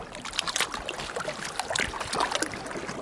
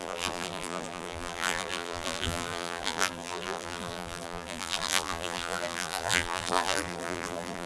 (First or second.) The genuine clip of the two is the first